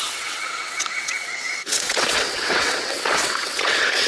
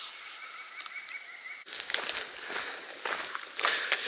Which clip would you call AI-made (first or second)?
first